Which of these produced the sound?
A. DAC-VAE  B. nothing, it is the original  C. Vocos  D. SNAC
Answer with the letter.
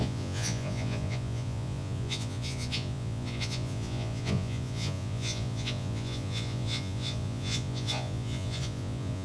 C